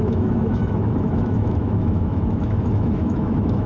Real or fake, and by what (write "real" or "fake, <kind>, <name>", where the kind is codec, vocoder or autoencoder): fake, autoencoder, DAC-VAE